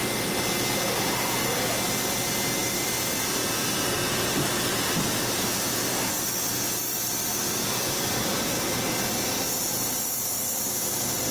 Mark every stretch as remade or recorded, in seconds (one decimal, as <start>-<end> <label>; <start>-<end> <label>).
0.0-2.6 recorded; 2.6-4.0 remade; 4.0-6.8 recorded; 6.8-8.8 remade; 8.8-11.3 recorded